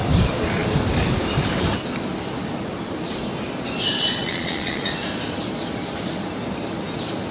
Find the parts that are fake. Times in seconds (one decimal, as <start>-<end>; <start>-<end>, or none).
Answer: 4.2-4.9